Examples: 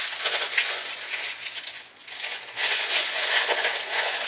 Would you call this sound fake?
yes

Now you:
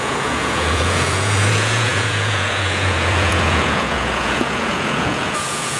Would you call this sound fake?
yes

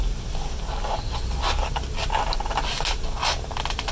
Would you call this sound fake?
no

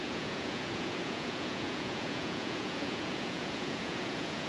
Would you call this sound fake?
yes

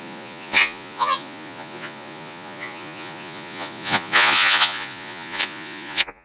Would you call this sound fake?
yes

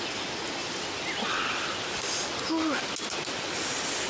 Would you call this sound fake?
no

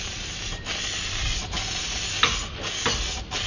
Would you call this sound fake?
no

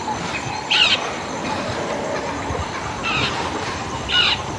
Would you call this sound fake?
no